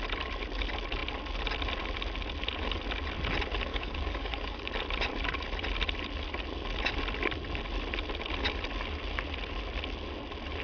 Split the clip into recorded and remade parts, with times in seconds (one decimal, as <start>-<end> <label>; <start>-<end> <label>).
0.0-3.7 recorded; 3.7-4.7 remade; 4.7-10.6 recorded